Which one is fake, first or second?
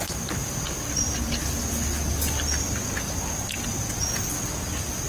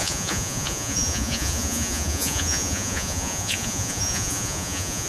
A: second